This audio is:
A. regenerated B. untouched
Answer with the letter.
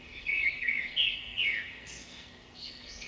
A